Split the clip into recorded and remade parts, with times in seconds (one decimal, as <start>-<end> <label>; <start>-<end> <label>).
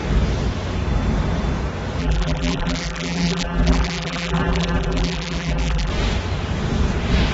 0.0-2.0 recorded; 2.0-5.9 remade; 5.9-7.3 recorded